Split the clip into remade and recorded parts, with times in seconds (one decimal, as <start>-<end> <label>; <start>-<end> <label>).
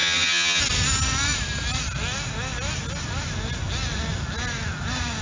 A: 0.0-0.6 remade; 0.6-5.2 recorded